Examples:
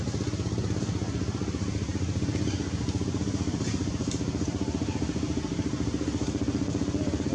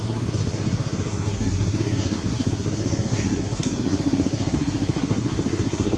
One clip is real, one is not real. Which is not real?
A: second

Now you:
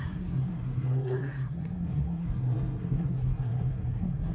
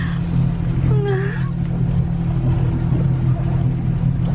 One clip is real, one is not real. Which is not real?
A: first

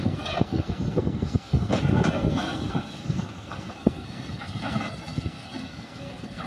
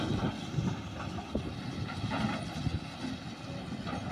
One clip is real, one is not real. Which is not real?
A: first